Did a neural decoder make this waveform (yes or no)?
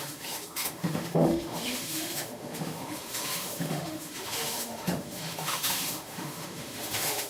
yes